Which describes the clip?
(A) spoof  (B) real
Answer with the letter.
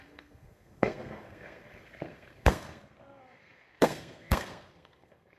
A